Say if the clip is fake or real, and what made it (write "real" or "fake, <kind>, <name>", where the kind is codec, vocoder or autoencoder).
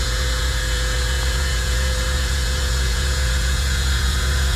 fake, vocoder, Vocos